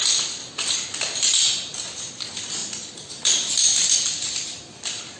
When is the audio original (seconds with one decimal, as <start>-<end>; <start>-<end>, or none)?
0.0-0.4; 1.4-2.6; 3.1-5.2